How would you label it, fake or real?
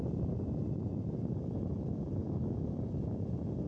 real